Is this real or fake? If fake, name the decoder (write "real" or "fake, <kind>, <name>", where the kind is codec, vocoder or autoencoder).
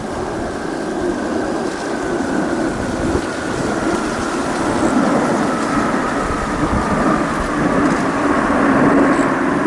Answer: real